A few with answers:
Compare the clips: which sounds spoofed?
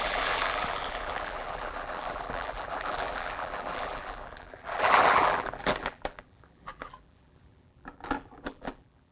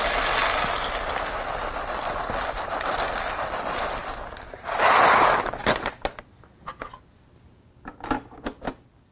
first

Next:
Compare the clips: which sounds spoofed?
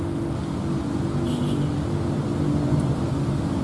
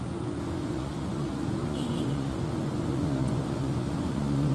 second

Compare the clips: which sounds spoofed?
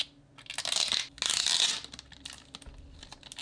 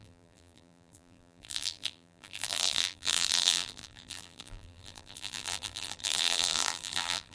second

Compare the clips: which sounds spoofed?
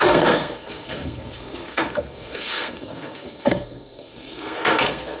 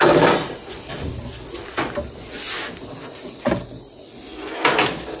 first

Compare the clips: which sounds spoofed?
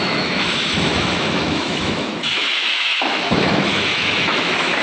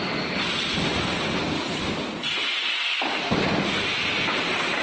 first